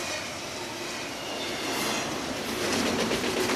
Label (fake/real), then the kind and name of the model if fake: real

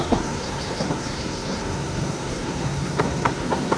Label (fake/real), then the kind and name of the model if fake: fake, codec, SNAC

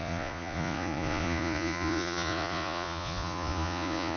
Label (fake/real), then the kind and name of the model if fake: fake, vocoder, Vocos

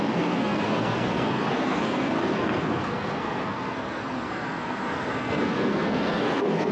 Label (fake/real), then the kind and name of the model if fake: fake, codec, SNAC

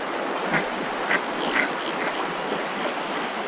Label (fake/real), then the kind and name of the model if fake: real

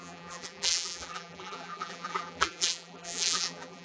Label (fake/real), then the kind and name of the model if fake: fake, vocoder, BigVGAN v2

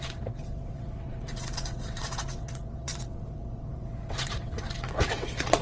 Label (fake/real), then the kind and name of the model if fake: fake, vocoder, WaveNeXt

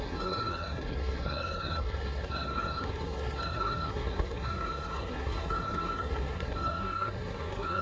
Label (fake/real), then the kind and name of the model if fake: fake, codec, SNAC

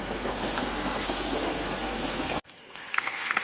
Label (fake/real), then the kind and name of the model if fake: fake, codec, SNAC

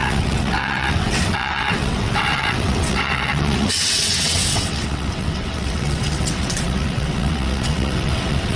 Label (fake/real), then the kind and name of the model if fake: fake, vocoder, WaveNeXt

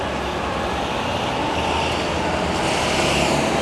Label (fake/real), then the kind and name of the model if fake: real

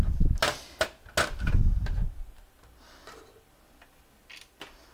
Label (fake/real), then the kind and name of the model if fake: real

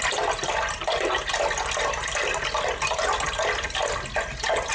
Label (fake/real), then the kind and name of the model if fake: real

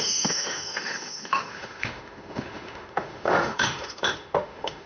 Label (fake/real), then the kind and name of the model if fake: fake, autoencoder, DAC-VAE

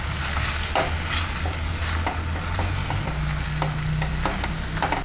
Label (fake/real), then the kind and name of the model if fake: real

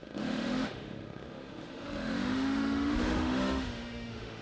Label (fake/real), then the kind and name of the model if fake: fake, autoencoder, DAC-VAE